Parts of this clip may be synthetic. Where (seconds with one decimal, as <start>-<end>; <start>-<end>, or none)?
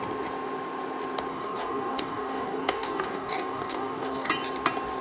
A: 1.3-4.3